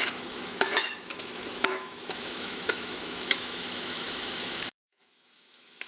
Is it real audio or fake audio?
fake